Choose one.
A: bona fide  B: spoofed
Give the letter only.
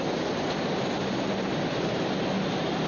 A